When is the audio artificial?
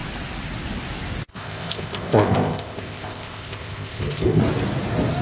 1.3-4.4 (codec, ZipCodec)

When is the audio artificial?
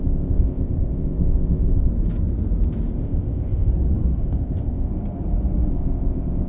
0.0-1.9 (codec, ZipCodec); 3.0-3.7; 4.2-4.9; 5.7-6.5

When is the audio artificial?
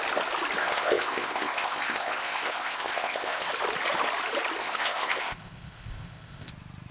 0.6-3.5 (codec, ZipCodec); 4.6-6.5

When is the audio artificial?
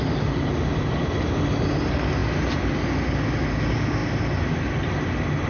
none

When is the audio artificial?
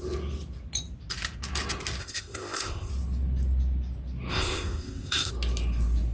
2.0-2.9 (codec, ZipCodec); 4.3-5.3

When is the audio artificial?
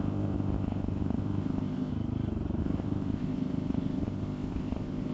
0.0-1.9 (codec, ZipCodec); 2.6-5.1